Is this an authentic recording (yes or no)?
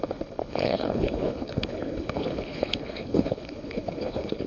no